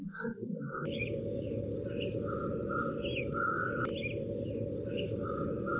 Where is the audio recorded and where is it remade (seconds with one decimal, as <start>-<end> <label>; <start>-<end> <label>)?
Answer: 0.0-1.7 remade; 1.7-3.2 recorded; 3.2-3.9 remade; 3.9-4.9 recorded; 4.9-5.8 remade